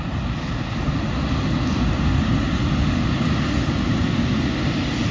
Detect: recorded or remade recorded